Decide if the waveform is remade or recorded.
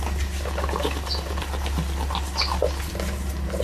recorded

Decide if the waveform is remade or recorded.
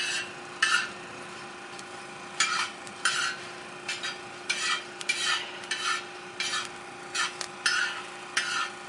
remade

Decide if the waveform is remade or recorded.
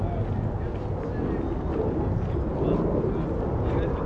recorded